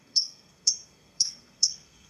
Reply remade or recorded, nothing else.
remade